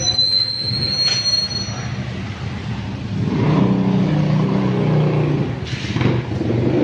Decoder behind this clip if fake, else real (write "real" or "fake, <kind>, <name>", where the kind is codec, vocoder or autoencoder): real